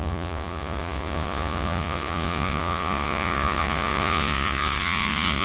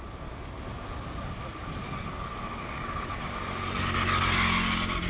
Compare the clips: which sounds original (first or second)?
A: second